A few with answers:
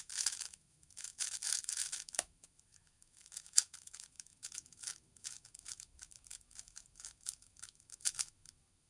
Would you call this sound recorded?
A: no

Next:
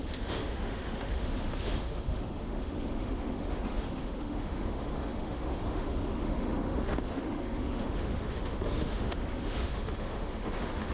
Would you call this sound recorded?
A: no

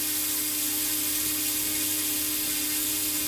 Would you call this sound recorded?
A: yes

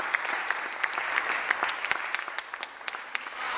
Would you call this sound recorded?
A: yes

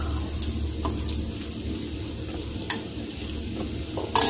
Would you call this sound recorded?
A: yes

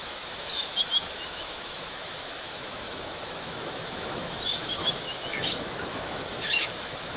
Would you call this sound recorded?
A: no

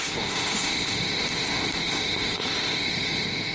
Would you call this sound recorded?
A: no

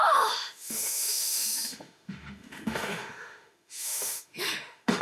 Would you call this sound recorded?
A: no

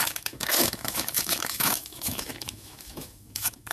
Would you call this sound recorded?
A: no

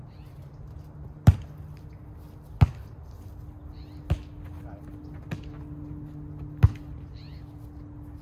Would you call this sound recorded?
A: yes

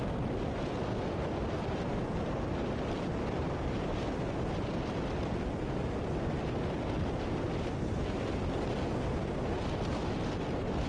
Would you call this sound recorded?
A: yes